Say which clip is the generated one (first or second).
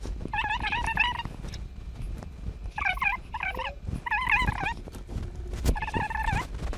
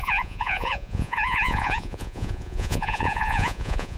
second